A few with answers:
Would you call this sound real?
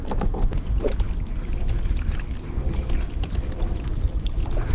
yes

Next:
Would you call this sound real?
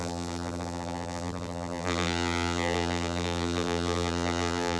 no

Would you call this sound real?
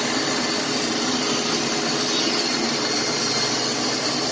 yes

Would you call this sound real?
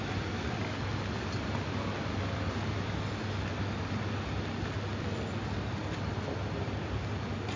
yes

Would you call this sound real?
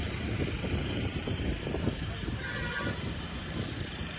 no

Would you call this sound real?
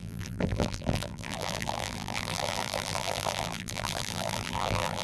no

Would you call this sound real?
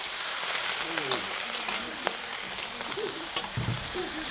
no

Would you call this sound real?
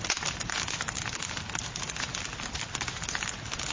yes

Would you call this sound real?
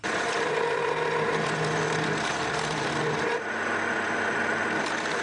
yes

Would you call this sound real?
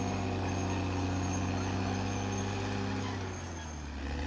yes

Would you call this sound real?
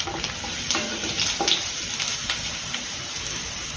no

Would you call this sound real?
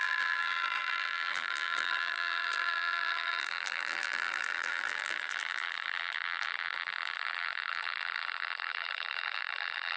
no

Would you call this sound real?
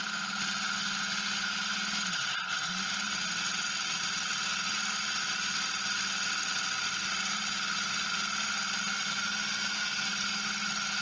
yes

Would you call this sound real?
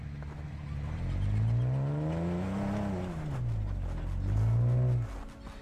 yes